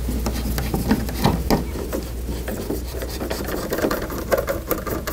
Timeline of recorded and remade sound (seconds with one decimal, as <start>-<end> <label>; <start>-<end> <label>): 0.0-2.5 recorded; 2.5-4.0 remade; 4.0-5.1 recorded